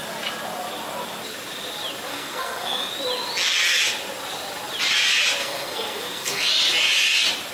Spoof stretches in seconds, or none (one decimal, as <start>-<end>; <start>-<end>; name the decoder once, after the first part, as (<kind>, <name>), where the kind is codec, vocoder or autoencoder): 2.1-2.9 (codec, SNAC); 5.4-6.5